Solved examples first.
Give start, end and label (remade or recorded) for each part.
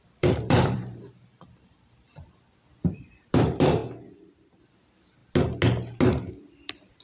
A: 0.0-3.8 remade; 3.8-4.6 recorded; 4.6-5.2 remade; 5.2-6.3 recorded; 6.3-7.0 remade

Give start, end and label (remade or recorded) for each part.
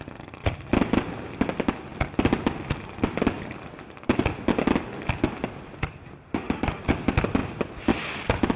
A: 0.0-6.3 recorded; 6.3-6.8 remade; 6.8-8.6 recorded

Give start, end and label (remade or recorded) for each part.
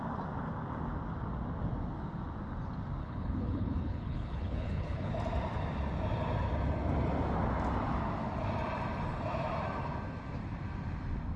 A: 0.0-3.0 recorded; 3.0-5.1 remade; 5.1-11.4 recorded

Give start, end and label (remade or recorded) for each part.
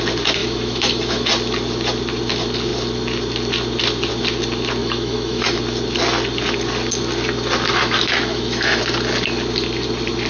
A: 0.0-0.4 recorded; 0.4-1.3 remade; 1.3-4.8 recorded; 4.8-5.6 remade; 5.6-7.8 recorded; 7.8-8.8 remade; 8.8-10.3 recorded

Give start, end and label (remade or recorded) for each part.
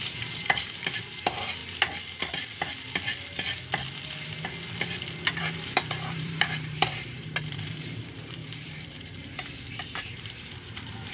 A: 0.0-1.6 remade; 1.6-5.4 recorded; 5.4-11.1 remade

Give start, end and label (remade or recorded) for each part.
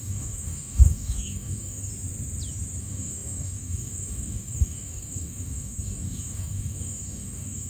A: 0.0-1.9 remade; 1.9-2.8 recorded; 2.8-7.7 remade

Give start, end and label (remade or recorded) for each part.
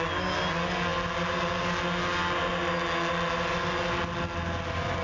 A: 0.0-5.0 recorded